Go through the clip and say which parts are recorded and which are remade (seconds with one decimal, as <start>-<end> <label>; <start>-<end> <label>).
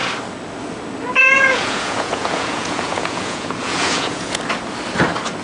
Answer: 0.0-1.2 recorded; 1.2-4.4 remade; 4.4-5.4 recorded